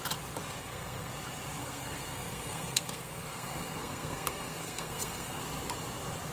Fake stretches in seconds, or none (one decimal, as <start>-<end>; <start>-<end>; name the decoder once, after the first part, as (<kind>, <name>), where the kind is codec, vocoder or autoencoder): 0.6-1.1 (codec, SNAC); 1.6-5.4